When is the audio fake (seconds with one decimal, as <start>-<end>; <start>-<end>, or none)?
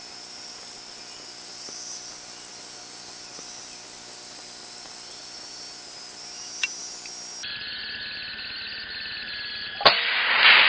none